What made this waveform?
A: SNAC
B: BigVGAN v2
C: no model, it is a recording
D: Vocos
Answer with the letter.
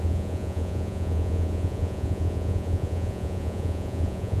D